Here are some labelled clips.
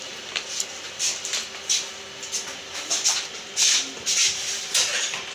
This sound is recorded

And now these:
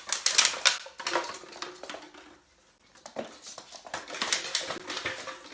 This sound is recorded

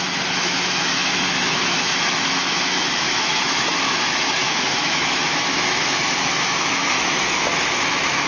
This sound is remade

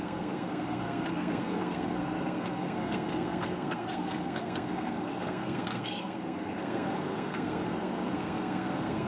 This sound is remade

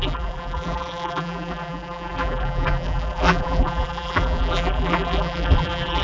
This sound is remade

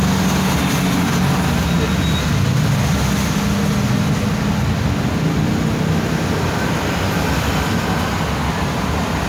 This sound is recorded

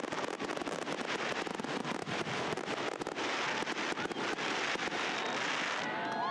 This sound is recorded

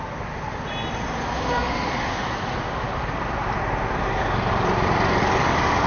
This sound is recorded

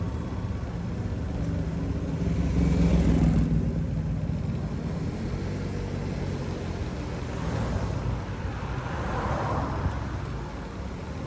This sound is recorded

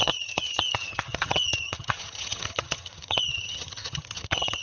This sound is remade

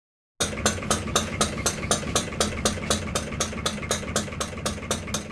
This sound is recorded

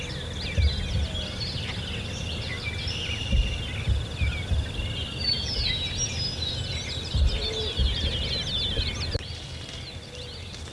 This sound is recorded